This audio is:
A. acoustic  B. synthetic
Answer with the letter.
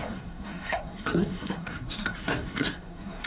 B